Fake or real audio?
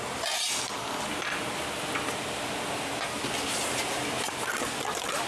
real